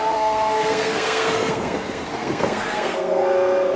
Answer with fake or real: fake